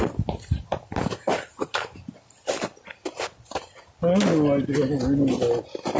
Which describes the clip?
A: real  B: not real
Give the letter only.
A